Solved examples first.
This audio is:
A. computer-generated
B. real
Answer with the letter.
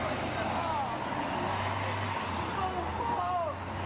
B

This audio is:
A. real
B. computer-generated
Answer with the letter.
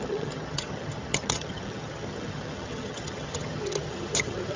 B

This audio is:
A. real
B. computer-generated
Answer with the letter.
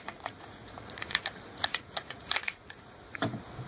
B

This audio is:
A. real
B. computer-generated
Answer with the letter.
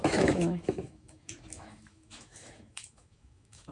B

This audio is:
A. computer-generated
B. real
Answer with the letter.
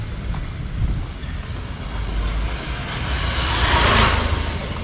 B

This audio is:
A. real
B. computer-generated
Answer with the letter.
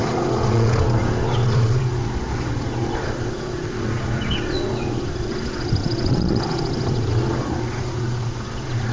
B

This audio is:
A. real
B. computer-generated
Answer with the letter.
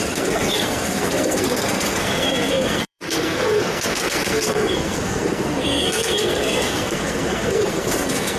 B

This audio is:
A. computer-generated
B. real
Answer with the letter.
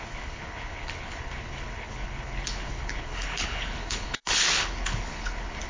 A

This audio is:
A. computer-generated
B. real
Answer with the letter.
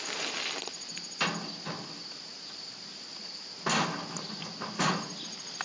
B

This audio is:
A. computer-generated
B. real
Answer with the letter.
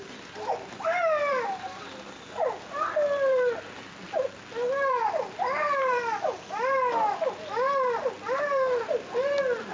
A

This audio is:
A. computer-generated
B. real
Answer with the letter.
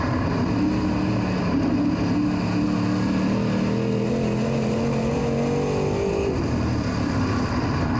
B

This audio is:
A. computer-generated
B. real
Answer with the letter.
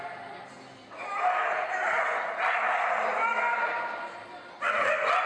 B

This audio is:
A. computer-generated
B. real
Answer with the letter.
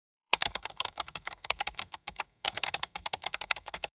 A